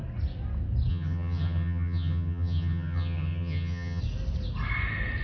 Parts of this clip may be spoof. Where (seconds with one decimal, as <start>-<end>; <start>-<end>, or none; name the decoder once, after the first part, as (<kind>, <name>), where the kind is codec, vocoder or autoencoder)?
0.9-4.0 (vocoder, HiFi-GAN)